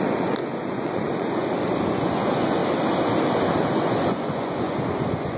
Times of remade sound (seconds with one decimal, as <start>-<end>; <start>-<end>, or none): 0.0-2.6; 3.7-5.4